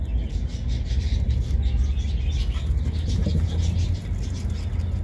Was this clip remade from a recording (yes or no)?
no